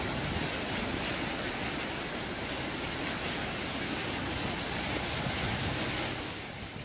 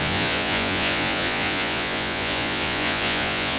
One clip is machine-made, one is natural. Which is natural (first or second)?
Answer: first